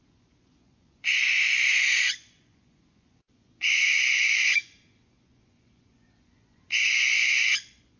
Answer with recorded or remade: remade